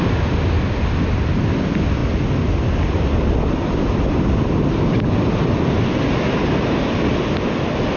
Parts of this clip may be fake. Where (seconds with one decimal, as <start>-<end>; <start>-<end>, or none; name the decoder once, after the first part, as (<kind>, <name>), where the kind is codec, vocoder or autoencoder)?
none